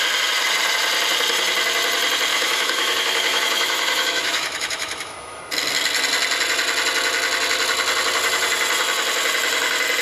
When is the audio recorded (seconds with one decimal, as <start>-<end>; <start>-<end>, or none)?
0.0-2.3; 5.4-10.0